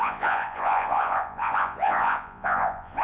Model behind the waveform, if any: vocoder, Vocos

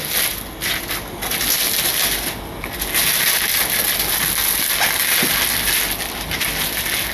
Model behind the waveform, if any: none